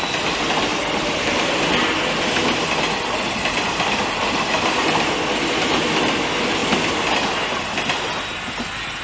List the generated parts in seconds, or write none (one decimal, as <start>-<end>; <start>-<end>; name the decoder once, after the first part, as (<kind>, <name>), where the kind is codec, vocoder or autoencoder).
0.7-1.7 (vocoder, BigVGAN v2)